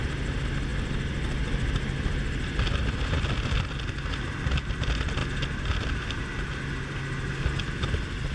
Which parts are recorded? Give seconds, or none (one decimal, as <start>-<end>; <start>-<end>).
0.0-8.3